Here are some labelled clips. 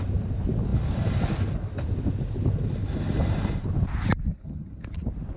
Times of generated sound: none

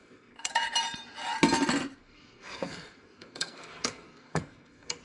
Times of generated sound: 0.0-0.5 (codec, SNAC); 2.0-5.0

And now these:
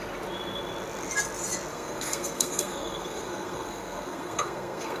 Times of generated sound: 1.7-5.0 (codec, SNAC)

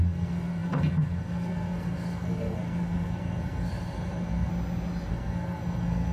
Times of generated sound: 0.0-4.5 (codec, SNAC); 5.1-6.1